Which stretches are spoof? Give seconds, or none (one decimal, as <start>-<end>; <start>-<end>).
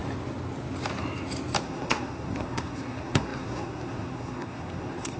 1.6-5.2